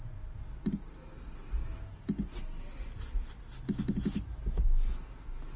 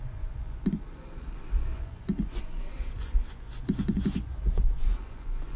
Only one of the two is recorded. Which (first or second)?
first